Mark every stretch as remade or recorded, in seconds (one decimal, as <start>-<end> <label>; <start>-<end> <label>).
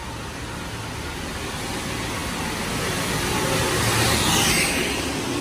0.0-5.4 recorded